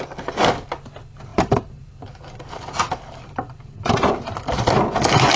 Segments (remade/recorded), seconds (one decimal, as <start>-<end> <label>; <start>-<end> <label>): 0.0-1.3 recorded; 1.3-4.0 remade; 4.0-5.4 recorded